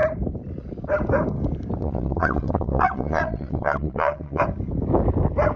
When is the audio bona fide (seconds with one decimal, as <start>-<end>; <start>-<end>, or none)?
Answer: 0.0-1.8; 4.4-5.6

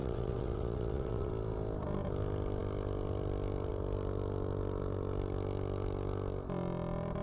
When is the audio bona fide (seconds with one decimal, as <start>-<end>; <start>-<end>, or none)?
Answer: 1.3-7.2

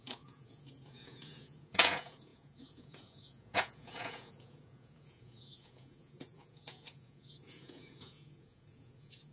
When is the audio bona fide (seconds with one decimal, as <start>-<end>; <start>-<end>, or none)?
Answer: none

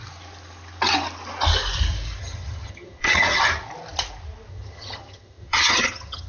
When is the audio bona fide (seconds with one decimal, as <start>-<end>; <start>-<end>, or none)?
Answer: 0.0-2.2; 3.5-4.5

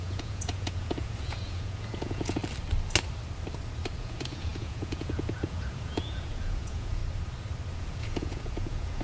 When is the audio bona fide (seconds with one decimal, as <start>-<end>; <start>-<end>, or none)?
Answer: 2.4-4.0; 7.0-7.8

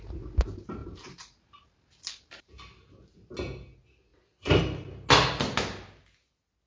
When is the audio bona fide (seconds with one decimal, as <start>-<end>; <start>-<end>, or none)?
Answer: 0.0-0.8; 3.3-6.7

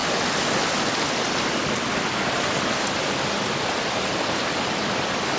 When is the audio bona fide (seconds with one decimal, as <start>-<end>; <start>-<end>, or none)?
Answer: 0.0-5.4

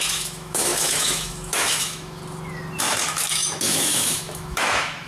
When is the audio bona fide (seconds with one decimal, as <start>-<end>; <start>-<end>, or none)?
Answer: 2.2-2.8